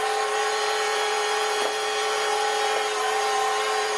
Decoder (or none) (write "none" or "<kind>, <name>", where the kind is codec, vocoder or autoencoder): none